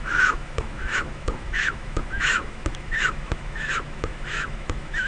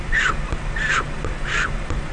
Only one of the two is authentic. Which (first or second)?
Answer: second